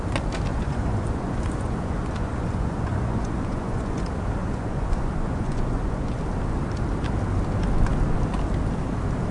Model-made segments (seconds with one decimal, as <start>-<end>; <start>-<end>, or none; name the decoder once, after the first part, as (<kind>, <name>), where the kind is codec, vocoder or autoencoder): 0.5-4.0 (vocoder, Vocos); 4.4-6.2